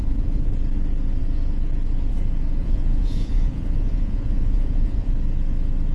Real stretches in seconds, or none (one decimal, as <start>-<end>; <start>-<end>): 0.5-2.6; 5.1-5.9